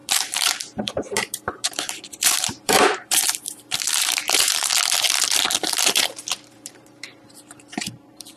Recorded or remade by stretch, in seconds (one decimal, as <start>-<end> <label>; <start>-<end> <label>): 0.0-4.7 remade; 4.7-5.7 recorded; 5.7-8.4 remade